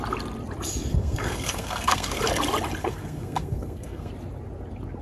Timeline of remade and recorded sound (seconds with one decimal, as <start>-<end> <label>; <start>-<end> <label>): 0.0-0.9 recorded; 0.9-2.2 remade; 2.2-2.8 recorded; 2.8-4.1 remade; 4.1-5.0 recorded